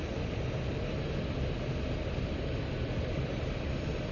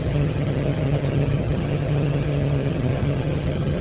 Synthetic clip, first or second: second